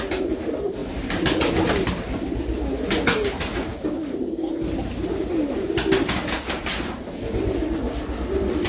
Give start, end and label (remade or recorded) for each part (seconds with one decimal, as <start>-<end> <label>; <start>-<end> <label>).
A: 0.0-8.7 recorded